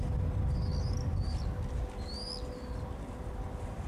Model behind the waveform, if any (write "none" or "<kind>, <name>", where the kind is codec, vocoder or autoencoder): none